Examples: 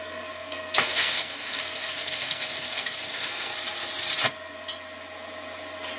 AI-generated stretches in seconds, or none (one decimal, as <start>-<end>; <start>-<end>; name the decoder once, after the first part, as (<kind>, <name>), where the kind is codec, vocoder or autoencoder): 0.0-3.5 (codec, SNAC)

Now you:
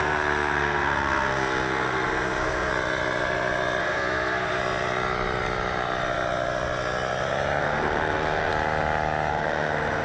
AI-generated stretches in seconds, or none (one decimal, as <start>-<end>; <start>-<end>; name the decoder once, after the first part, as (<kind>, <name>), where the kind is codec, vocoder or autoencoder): 0.0-2.7 (codec, SNAC); 3.8-4.6; 7.6-8.5; 9.3-10.0

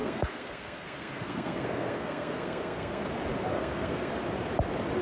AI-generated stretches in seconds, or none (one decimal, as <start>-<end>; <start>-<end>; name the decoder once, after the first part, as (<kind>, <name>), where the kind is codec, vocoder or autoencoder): 0.0-3.0 (codec, SNAC); 3.5-4.1

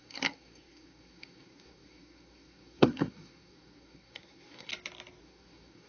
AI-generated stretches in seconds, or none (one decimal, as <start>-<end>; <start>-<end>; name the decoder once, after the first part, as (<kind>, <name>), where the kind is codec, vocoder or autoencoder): 0.0-4.7 (codec, SNAC); 5.2-5.9

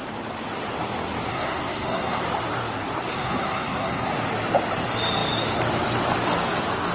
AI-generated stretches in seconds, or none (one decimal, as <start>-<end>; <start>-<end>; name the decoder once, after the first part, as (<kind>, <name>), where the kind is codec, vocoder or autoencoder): 1.3-2.2 (codec, SNAC); 3.1-4.1

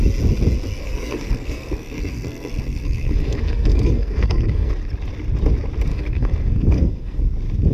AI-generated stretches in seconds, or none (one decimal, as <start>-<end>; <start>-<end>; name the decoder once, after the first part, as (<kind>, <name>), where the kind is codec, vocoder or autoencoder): 0.8-4.7 (codec, SNAC); 5.9-7.2

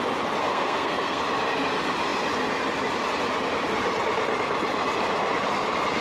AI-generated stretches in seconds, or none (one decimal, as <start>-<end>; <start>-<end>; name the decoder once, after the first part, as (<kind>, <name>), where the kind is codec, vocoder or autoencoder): 0.4-1.2 (codec, SNAC)

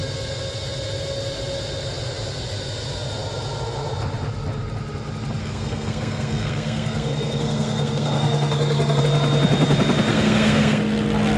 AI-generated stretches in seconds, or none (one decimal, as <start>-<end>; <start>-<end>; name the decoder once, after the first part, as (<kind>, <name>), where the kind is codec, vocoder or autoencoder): 5.4-9.0 (codec, SNAC); 10.1-10.8